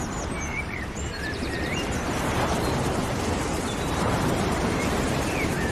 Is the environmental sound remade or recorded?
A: remade